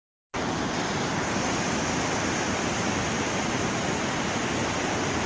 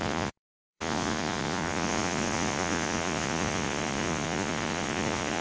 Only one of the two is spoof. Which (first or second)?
second